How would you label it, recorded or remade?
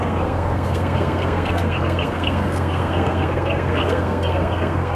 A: remade